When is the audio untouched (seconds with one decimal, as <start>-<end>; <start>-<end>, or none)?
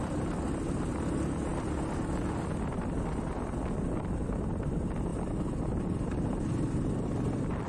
0.0-7.7